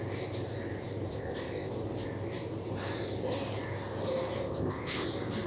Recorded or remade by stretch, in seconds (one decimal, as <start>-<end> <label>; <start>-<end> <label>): 0.0-1.1 recorded; 1.1-1.7 remade; 1.7-4.4 recorded; 4.4-5.1 remade; 5.1-5.5 recorded